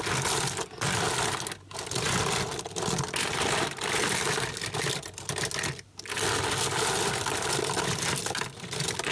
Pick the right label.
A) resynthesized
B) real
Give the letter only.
B